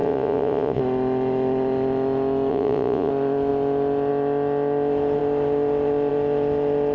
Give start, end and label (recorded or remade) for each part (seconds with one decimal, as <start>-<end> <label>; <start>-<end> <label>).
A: 0.0-0.8 remade; 0.8-2.5 recorded; 2.5-3.1 remade; 3.1-6.9 recorded